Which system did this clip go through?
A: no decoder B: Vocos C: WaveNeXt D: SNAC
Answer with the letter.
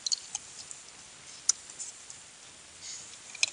A